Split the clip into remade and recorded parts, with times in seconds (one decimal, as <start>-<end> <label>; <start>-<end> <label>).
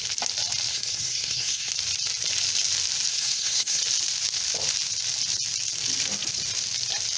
0.0-0.7 recorded; 0.7-1.7 remade; 1.7-3.1 recorded; 3.1-3.8 remade; 3.8-7.2 recorded